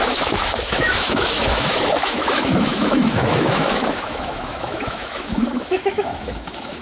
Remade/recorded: remade